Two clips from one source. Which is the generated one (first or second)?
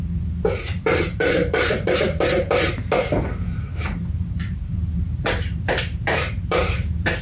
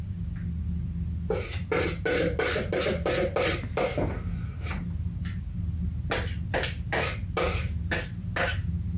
first